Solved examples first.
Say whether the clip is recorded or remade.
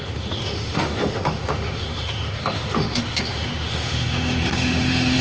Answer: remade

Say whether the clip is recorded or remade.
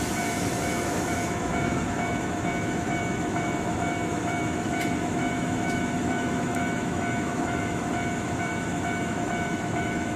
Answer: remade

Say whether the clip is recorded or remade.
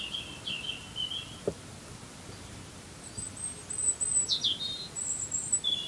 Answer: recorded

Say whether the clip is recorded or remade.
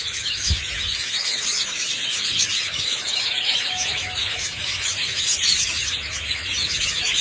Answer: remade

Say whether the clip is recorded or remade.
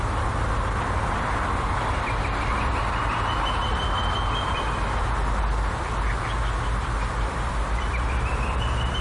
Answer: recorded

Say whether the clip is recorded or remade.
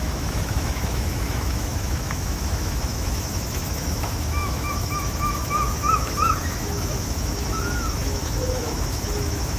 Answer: remade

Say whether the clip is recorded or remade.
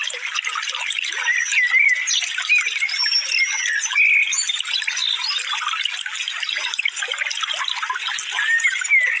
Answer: recorded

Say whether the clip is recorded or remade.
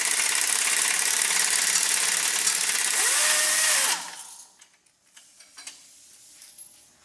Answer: recorded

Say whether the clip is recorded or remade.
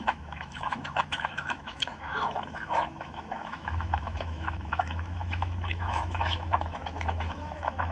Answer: remade